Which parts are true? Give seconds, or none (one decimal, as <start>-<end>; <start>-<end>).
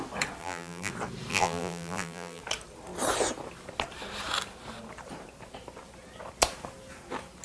0.0-0.4; 0.9-1.3; 2.4-7.4